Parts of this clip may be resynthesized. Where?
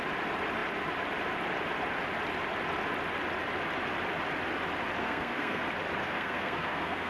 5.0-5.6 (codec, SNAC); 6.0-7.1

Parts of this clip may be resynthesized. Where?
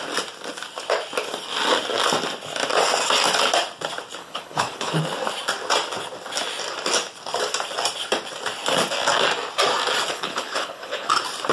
4.2-5.0 (codec, HILCodec); 10.1-11.1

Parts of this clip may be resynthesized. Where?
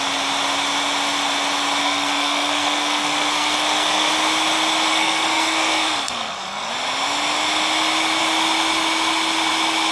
1.8-4.1 (codec, SNAC); 4.9-6.7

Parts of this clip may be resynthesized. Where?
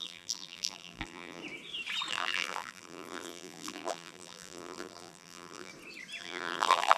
0.0-1.4 (vocoder, BigVGAN v2); 2.1-5.7; 6.2-7.0